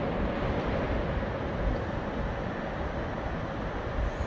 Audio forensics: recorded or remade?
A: recorded